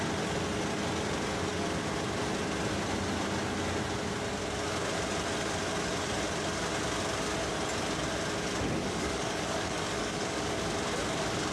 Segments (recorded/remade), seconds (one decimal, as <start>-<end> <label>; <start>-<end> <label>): 0.0-8.8 recorded; 8.8-10.6 remade; 10.6-11.5 recorded